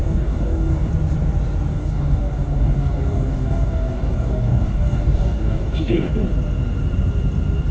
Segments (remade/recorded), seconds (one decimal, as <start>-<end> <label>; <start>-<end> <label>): 0.0-0.9 remade; 0.9-1.7 recorded; 1.7-6.1 remade; 6.1-7.7 recorded